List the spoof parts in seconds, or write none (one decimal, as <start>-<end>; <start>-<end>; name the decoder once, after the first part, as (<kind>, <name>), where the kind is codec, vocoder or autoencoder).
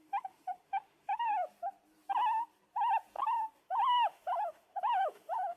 0.0-1.3 (autoencoder, DAC-VAE); 3.6-5.6